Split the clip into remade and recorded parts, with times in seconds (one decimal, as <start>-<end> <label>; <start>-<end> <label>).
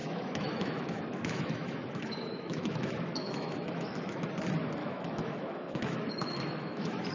0.0-4.3 remade; 4.3-4.8 recorded; 4.8-7.1 remade